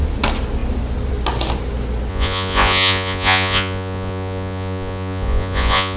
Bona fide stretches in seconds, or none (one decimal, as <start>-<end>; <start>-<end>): 0.0-2.1